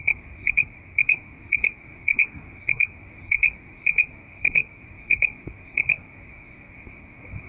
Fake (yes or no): yes